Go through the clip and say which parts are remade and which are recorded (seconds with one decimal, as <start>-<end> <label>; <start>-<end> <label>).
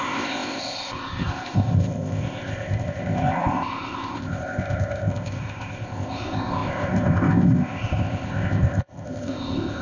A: 0.0-9.8 remade